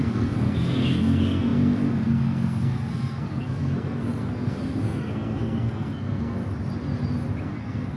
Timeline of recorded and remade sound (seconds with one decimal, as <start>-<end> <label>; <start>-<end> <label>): 0.0-6.4 remade; 6.4-7.4 recorded; 7.4-8.0 remade